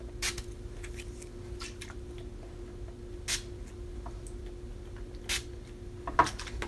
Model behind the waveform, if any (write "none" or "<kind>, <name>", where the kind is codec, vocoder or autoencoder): none